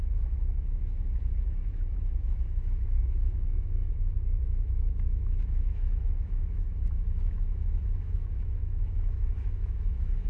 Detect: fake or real fake